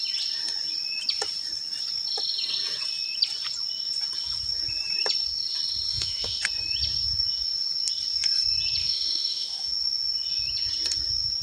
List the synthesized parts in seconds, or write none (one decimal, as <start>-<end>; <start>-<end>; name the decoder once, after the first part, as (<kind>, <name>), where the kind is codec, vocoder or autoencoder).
5.9-6.4 (autoencoder, DAC-VAE); 8.8-9.7